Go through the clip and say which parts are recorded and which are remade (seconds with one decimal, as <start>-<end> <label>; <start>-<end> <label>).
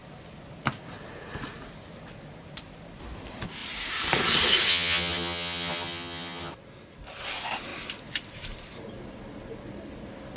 0.0-4.7 recorded; 4.7-6.5 remade; 6.5-10.4 recorded